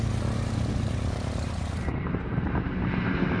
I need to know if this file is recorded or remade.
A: remade